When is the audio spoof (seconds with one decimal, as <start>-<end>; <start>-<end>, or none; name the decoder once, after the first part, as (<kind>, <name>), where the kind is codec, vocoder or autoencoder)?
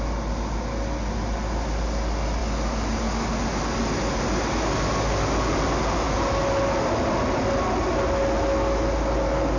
none